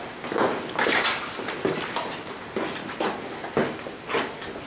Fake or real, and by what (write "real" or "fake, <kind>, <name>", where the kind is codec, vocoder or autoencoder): real